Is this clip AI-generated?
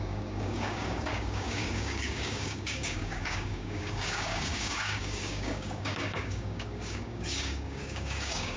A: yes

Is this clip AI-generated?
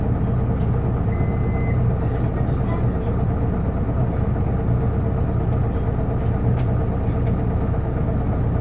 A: no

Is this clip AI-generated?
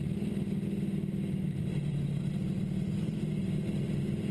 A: no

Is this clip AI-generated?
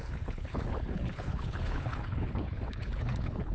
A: yes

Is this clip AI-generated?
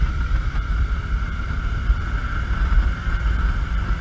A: yes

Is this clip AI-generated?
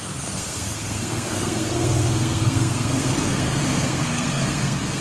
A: yes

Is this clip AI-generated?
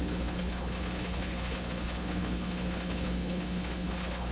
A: yes